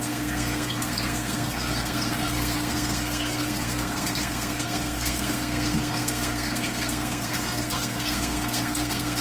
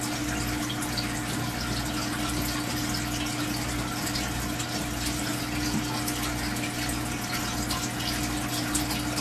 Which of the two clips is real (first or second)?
second